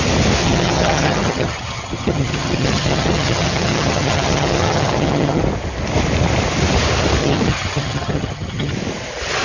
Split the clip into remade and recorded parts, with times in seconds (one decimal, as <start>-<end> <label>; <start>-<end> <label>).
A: 0.0-0.4 recorded; 0.4-5.4 remade; 5.4-7.2 recorded; 7.2-8.7 remade; 8.7-9.4 recorded